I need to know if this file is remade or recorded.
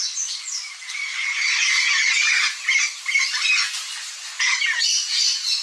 recorded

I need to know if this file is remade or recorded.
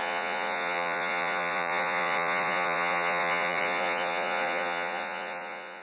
remade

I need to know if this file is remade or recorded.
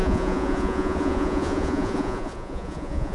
remade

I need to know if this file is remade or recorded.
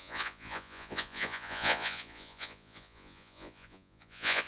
remade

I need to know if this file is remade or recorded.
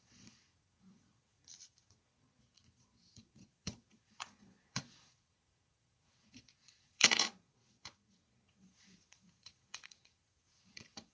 remade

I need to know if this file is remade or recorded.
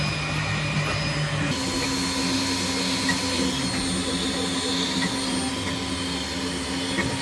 recorded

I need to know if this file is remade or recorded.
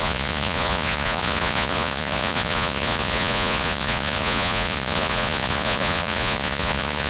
remade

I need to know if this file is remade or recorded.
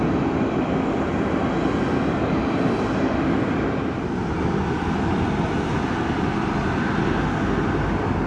recorded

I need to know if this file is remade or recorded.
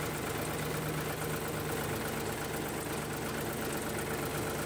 recorded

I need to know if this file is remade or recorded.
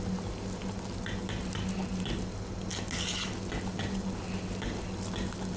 recorded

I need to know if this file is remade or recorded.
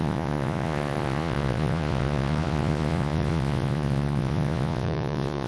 remade